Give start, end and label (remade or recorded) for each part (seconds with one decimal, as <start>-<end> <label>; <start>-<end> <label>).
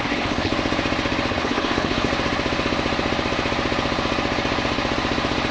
0.0-0.5 remade; 0.5-1.3 recorded; 1.3-2.1 remade; 2.1-5.5 recorded